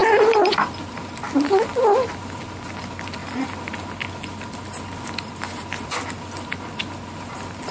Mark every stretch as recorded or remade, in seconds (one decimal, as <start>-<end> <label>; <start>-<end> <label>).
0.0-7.7 recorded